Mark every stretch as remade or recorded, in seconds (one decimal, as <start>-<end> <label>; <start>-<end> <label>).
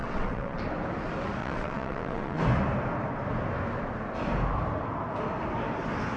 0.0-0.6 remade; 0.6-1.4 recorded; 1.4-2.4 remade; 2.4-6.2 recorded